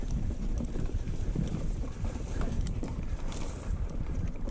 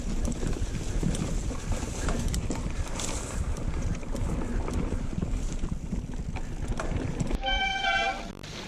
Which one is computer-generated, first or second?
first